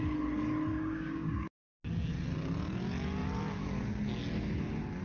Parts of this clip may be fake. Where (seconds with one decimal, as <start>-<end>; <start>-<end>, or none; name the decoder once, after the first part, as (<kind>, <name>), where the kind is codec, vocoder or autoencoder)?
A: 0.7-1.7 (codec, DAC)